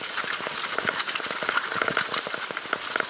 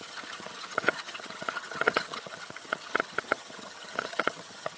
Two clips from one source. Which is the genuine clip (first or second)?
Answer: first